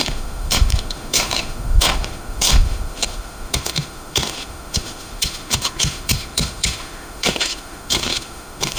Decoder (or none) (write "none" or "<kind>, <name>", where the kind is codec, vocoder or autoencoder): autoencoder, DAC-VAE